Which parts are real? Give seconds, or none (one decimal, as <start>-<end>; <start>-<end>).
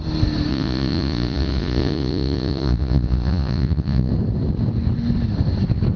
0.0-0.5; 4.1-6.0